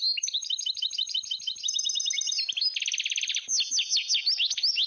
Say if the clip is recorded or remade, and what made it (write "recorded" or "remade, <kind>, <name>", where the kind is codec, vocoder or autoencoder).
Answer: recorded